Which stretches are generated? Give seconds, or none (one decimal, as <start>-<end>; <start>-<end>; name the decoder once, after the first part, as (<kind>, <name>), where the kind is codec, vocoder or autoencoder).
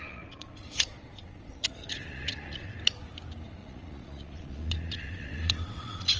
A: 0.0-2.7 (vocoder, Vocos); 3.6-6.2